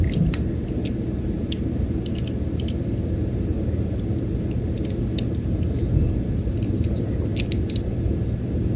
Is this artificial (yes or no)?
no